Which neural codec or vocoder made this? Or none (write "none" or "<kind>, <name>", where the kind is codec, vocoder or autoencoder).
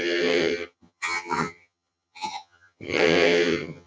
vocoder, HiFi-GAN